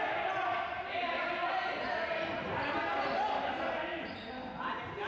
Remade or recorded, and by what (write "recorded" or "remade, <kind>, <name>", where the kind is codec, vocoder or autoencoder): recorded